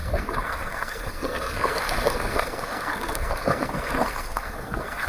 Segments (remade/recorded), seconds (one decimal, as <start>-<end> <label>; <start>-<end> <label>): 0.0-5.1 remade

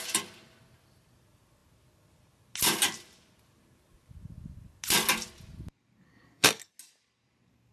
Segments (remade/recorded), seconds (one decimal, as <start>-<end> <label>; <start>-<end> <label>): 0.0-6.0 recorded; 6.0-6.7 remade; 6.7-7.7 recorded

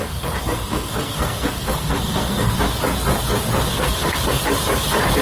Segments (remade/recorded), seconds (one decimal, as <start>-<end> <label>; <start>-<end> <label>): 0.0-2.5 remade; 2.5-3.7 recorded; 3.7-4.4 remade; 4.4-5.2 recorded

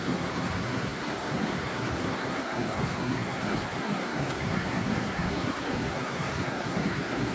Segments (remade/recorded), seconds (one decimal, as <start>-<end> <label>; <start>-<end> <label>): 0.0-7.3 remade